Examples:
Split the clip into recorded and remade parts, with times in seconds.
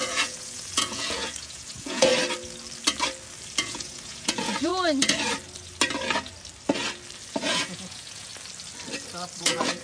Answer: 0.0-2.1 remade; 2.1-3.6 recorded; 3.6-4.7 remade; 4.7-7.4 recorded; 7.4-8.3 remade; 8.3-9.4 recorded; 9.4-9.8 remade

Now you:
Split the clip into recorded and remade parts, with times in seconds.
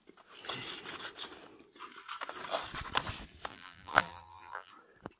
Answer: 0.0-3.5 recorded; 3.5-4.7 remade; 4.7-5.2 recorded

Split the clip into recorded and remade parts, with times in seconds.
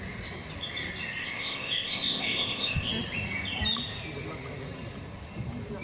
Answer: 0.0-1.2 recorded; 1.2-2.9 remade; 2.9-5.8 recorded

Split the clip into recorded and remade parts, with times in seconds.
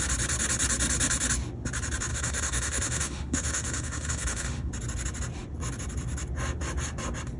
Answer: 0.0-2.1 recorded; 2.1-4.7 remade; 4.7-7.4 recorded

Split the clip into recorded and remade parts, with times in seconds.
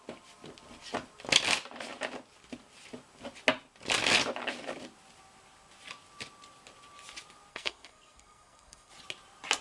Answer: 0.0-7.5 recorded; 7.5-8.9 remade; 8.9-9.6 recorded